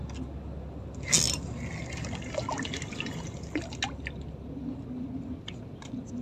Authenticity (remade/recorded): recorded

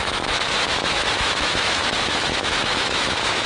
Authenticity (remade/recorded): remade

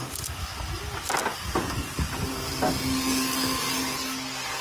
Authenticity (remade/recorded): recorded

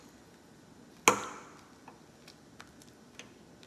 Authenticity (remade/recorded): recorded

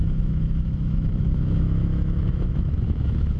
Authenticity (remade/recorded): remade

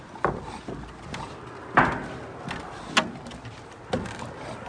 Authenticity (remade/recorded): recorded